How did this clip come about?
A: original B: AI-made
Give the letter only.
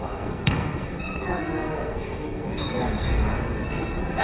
B